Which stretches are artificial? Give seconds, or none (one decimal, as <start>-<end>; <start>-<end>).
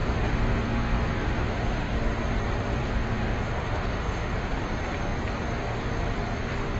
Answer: 0.0-1.9; 2.8-4.6